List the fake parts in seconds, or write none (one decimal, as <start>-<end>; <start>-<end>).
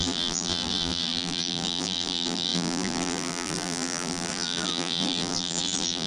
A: 0.0-6.1